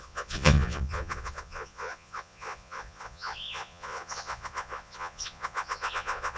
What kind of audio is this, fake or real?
fake